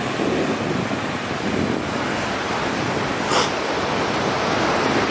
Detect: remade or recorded recorded